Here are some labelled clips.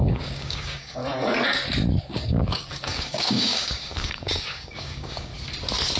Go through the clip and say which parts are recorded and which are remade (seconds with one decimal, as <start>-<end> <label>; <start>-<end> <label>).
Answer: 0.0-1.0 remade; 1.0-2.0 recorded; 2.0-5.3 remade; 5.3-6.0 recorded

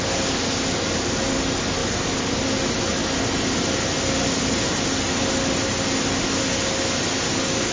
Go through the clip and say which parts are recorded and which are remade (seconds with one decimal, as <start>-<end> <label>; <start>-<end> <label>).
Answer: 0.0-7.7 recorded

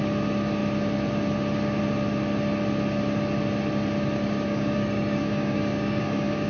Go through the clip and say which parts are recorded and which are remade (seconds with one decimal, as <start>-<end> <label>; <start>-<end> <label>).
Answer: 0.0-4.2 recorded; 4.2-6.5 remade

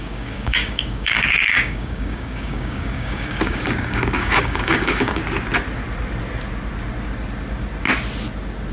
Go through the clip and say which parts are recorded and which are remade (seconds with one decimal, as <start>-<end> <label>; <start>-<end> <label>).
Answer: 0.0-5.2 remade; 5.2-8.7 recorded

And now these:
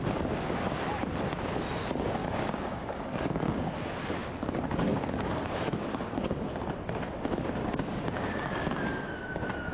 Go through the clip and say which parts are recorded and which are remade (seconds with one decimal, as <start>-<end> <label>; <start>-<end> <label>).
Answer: 0.0-2.2 recorded; 2.2-3.7 remade; 3.7-4.9 recorded; 4.9-6.5 remade; 6.5-7.6 recorded; 7.6-8.7 remade; 8.7-9.7 recorded

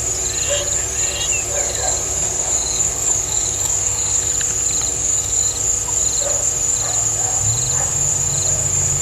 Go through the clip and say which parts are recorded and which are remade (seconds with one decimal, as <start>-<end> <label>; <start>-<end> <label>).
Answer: 0.0-1.6 recorded; 1.6-4.3 remade; 4.3-4.9 recorded; 4.9-5.5 remade; 5.5-9.0 recorded